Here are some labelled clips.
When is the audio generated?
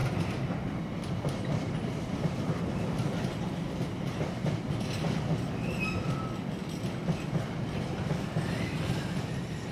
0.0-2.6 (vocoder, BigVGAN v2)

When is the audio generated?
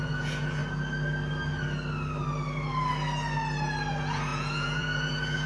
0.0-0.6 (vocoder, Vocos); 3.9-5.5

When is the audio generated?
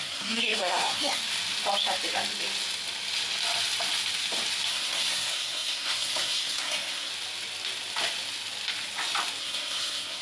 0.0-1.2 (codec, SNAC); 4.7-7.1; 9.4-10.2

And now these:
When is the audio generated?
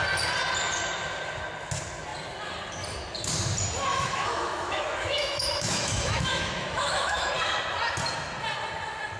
3.9-7.3 (autoencoder, DAC-VAE)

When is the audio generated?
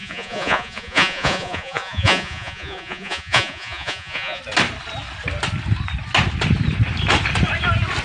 0.0-4.4 (vocoder, Vocos)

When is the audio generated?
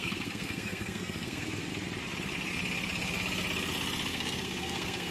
0.0-1.7 (codec, SNAC); 4.1-5.1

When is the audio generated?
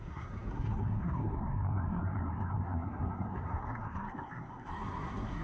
0.0-5.4 (codec, SNAC)